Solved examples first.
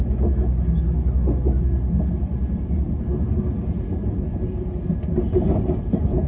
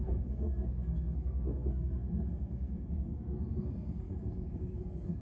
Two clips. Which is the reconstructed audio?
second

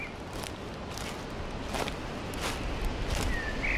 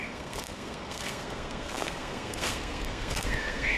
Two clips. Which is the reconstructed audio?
second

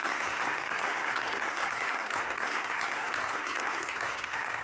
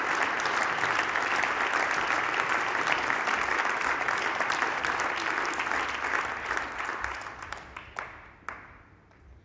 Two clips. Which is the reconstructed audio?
first